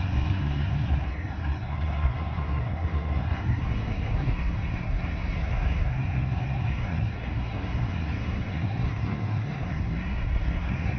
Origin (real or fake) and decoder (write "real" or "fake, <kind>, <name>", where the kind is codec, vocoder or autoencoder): fake, codec, SNAC